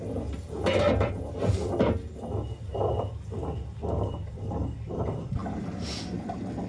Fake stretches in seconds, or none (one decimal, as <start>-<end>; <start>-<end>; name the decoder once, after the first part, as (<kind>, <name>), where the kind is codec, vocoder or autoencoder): 2.7-5.0 (vocoder, BigVGAN v2)